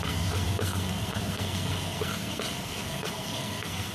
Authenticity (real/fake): fake